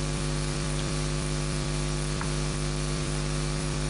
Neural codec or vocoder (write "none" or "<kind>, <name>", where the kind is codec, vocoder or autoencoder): vocoder, BigVGAN v2